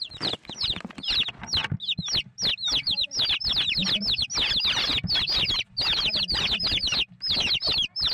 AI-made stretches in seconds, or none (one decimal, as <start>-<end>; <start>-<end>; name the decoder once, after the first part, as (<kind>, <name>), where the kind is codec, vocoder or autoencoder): none